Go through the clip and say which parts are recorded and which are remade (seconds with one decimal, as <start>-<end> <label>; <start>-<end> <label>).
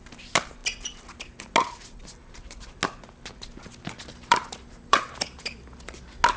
0.0-4.3 recorded; 4.3-5.6 remade; 5.6-6.4 recorded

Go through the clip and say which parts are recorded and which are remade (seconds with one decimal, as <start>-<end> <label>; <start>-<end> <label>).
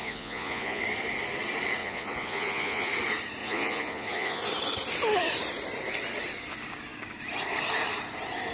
0.0-0.8 remade; 0.8-1.8 recorded; 1.8-2.9 remade; 2.9-3.4 recorded; 3.4-4.4 remade; 4.4-8.5 recorded